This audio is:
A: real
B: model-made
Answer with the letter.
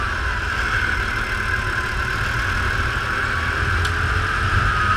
A